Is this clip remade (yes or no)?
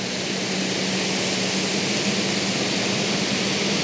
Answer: no